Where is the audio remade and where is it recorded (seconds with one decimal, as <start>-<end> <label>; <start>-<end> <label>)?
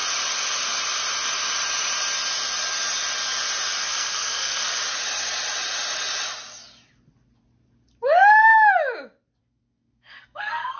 0.0-3.8 recorded; 3.8-4.8 remade; 4.8-9.4 recorded; 9.4-10.8 remade